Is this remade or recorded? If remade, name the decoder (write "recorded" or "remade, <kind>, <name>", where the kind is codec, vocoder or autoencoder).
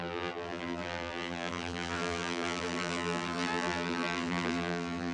remade, vocoder, BigVGAN v2